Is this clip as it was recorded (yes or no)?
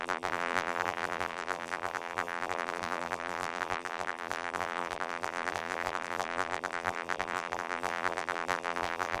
no